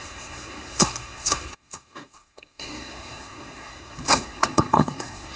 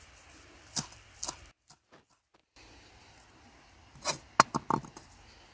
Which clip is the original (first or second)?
second